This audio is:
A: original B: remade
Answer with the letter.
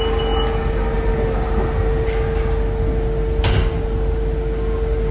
A